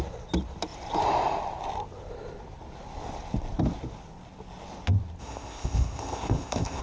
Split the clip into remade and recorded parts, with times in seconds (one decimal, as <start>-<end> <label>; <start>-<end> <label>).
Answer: 0.0-5.2 recorded; 5.2-6.8 remade